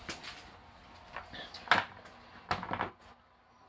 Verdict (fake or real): real